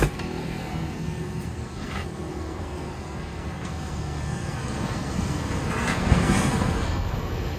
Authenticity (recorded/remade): remade